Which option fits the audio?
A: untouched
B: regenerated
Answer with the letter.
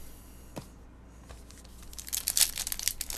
A